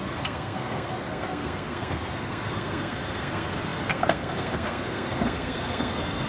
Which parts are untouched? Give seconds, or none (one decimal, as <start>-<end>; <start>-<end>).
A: none

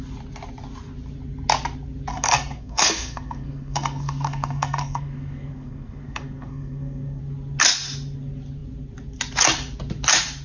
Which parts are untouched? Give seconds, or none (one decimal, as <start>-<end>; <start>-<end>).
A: 0.0-2.1; 7.2-10.4

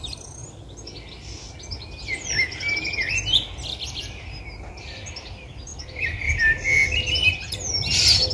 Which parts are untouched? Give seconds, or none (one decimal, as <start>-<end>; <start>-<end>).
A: 0.0-8.3

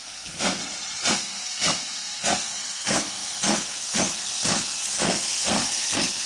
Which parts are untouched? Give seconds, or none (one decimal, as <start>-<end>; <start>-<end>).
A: 0.6-1.1

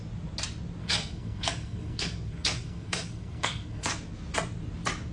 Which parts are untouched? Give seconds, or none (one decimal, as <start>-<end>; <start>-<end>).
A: 0.0-0.8; 3.9-5.1

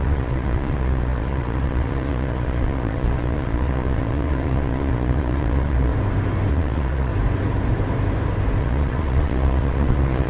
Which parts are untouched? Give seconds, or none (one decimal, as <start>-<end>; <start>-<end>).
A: 5.9-6.5; 7.1-8.6

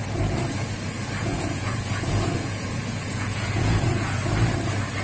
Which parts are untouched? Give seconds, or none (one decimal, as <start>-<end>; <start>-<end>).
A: 0.0-1.2; 4.2-5.0

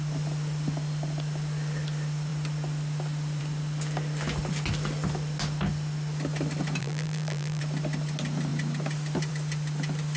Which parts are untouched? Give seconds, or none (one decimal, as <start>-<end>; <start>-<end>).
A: 0.0-6.8; 7.6-10.2